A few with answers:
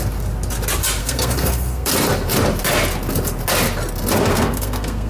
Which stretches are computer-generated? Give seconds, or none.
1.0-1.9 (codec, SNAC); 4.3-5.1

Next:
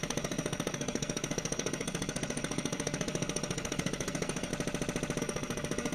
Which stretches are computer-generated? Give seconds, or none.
0.0-4.5 (codec, SNAC); 5.2-5.9

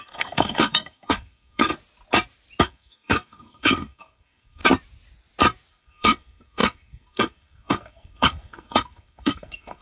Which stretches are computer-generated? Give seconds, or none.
0.0-1.7 (codec, SNAC); 2.6-4.6; 5.7-9.8

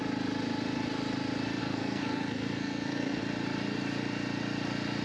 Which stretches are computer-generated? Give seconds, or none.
1.6-3.2 (codec, SNAC)

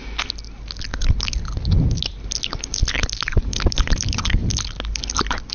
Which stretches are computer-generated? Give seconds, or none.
none

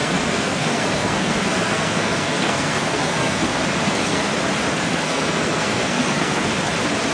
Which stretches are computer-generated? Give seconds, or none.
0.0-4.3 (codec, SNAC); 4.7-6.5

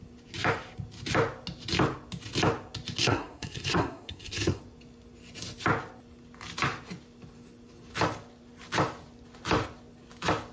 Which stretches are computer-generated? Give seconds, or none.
3.0-4.6 (codec, SNAC)